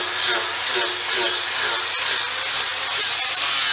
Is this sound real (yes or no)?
yes